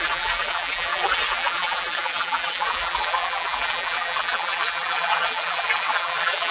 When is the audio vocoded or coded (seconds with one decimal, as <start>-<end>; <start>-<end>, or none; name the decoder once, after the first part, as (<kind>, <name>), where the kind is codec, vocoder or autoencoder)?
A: 0.0-6.5 (vocoder, BigVGAN v2)